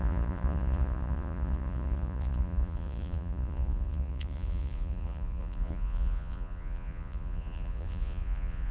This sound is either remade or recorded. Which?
remade